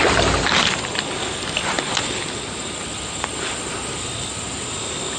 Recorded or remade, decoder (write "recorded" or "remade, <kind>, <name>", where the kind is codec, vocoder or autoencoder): recorded